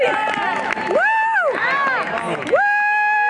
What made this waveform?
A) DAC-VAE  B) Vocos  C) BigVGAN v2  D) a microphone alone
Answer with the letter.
D